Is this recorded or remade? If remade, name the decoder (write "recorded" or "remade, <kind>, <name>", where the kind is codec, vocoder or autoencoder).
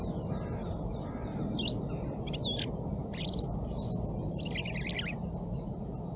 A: recorded